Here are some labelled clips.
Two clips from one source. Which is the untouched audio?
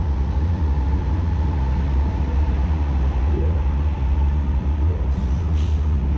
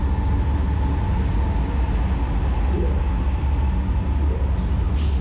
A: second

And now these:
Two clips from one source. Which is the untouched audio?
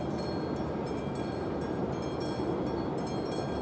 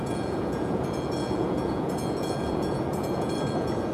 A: first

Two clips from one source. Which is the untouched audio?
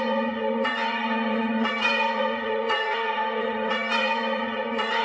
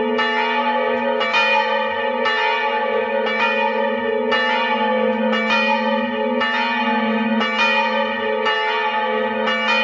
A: second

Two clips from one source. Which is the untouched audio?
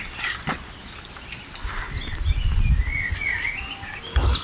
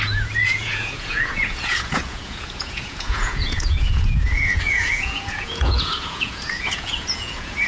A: first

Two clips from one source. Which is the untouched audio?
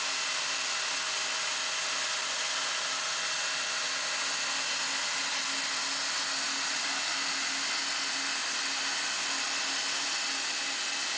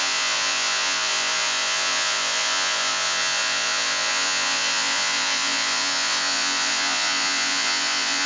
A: first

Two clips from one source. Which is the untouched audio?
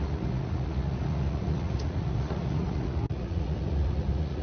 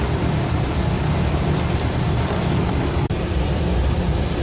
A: second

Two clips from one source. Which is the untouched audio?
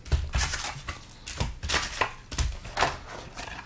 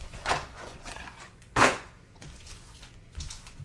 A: first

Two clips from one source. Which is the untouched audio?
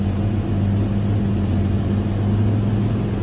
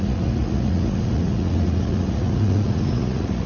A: first